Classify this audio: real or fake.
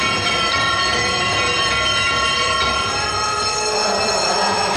fake